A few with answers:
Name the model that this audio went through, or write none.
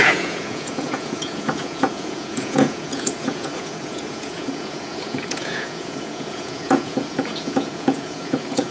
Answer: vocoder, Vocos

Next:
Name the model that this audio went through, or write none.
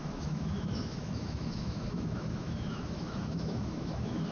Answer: autoencoder, DAC-VAE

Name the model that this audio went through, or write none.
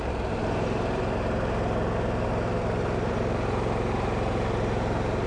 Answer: vocoder, BigVGAN v2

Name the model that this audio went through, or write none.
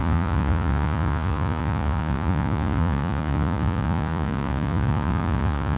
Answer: vocoder, Vocos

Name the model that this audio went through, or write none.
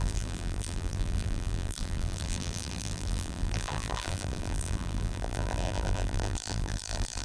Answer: vocoder, BigVGAN v2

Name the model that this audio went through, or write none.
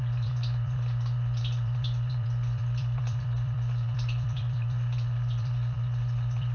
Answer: vocoder, BigVGAN v2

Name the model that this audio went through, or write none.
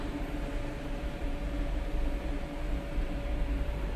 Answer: vocoder, BigVGAN v2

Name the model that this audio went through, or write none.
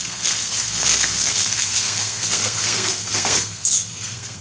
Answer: codec, SNAC